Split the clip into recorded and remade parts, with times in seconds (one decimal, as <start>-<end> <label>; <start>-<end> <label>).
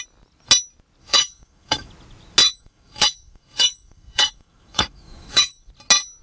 0.0-1.0 recorded; 1.0-1.9 remade; 1.9-2.4 recorded; 2.4-5.7 remade; 5.7-6.2 recorded